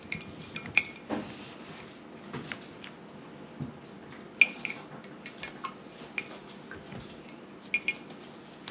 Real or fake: real